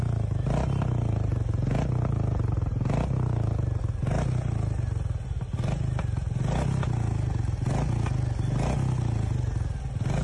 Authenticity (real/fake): real